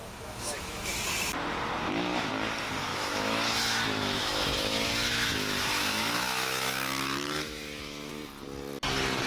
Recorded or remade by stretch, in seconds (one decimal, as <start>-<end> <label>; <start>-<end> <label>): 0.0-0.9 remade; 0.9-2.9 recorded; 2.9-8.1 remade; 8.1-9.3 recorded